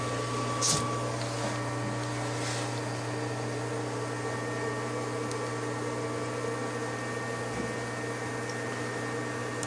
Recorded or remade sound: recorded